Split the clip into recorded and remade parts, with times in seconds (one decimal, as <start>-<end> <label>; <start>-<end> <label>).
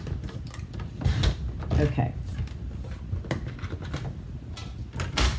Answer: 0.0-5.4 recorded